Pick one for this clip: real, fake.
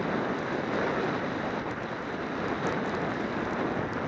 real